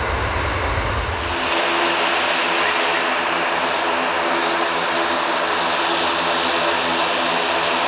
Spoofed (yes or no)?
no